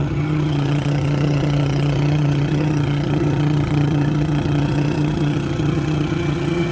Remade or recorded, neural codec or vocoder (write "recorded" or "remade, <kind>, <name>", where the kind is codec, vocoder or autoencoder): remade, vocoder, HiFi-GAN